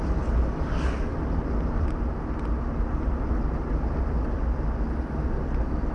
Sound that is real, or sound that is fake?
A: real